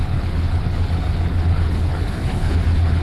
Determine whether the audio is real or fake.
fake